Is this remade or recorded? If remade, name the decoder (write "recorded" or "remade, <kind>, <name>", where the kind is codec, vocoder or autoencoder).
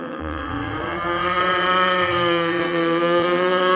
remade, vocoder, WaveNeXt